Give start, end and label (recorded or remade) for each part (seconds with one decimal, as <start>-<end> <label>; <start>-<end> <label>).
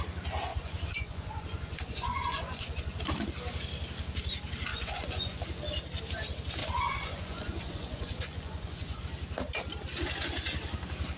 0.0-0.5 recorded; 0.5-3.0 remade; 3.0-4.7 recorded; 4.7-5.4 remade; 5.4-6.6 recorded; 6.6-9.0 remade; 9.0-11.2 recorded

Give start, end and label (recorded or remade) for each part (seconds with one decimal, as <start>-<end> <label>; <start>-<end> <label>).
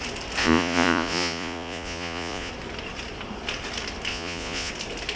0.0-0.4 recorded; 0.4-2.5 remade; 2.5-4.1 recorded; 4.1-4.7 remade; 4.7-5.2 recorded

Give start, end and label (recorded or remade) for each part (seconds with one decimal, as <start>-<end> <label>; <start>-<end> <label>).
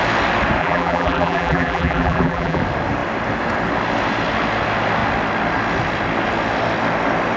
0.0-0.6 recorded; 0.6-2.6 remade; 2.6-7.4 recorded